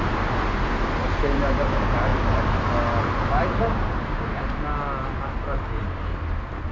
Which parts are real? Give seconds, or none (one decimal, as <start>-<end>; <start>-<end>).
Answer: 0.0-6.7